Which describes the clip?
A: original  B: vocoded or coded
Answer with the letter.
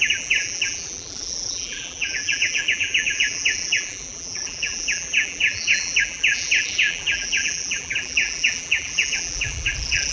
B